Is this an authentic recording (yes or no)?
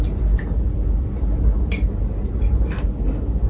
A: yes